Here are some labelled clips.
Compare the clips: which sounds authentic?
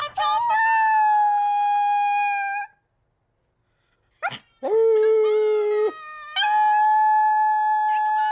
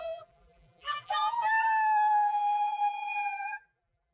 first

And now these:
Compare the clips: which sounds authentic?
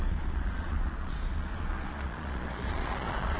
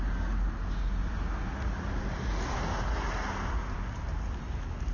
second